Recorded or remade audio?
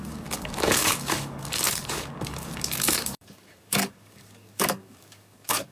remade